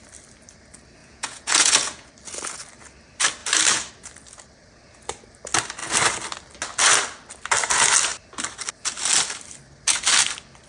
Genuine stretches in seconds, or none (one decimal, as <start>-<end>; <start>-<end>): 0.0-1.0; 2.1-10.7